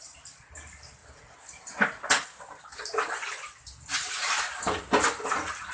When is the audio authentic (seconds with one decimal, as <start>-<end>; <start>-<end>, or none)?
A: 0.0-5.7